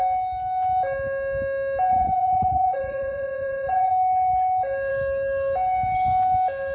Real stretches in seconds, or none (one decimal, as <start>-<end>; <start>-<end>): 0.0-1.9; 3.9-6.7